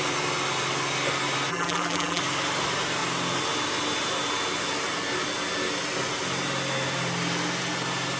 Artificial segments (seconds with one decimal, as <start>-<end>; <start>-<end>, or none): 1.5-2.2